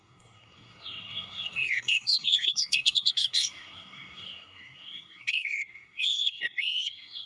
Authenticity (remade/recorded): remade